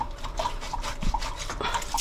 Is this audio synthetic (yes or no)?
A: yes